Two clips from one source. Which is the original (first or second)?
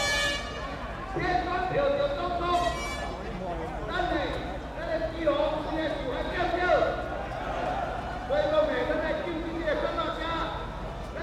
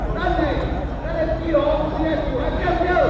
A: first